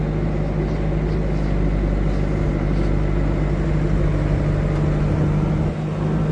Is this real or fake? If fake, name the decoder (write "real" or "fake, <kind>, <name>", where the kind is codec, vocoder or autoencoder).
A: real